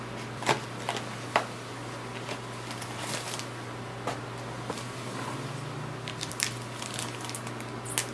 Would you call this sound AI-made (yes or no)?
no